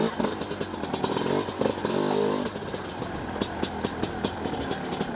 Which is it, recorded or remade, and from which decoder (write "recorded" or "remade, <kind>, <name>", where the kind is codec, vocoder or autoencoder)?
recorded